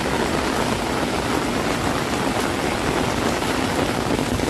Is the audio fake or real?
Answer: real